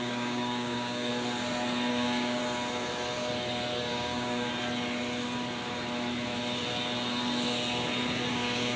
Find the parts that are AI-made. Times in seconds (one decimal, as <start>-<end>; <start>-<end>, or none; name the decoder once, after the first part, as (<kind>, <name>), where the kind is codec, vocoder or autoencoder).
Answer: 0.0-1.1 (codec, DAC); 1.9-2.4; 3.9-4.5; 8.3-8.8